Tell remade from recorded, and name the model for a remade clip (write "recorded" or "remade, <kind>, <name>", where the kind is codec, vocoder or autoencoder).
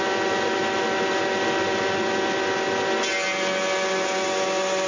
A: recorded